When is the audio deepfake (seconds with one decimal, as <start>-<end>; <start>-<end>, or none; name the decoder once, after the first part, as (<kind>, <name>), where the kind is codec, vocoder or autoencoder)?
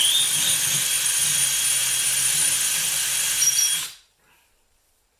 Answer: none